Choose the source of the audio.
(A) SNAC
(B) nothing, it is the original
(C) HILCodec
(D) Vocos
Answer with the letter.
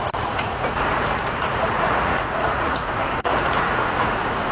D